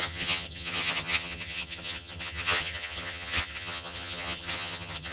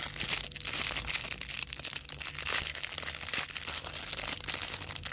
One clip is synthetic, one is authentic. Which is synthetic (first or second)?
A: first